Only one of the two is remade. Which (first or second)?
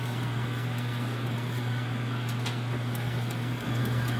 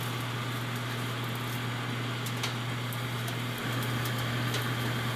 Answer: first